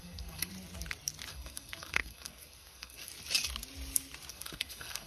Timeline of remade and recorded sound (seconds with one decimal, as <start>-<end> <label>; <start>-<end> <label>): 0.0-0.5 remade; 0.5-1.3 recorded; 1.3-3.1 remade; 3.1-4.3 recorded; 4.3-5.1 remade